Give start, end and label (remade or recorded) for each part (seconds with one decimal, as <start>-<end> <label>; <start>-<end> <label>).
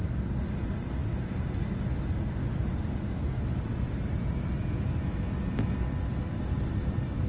0.0-7.3 recorded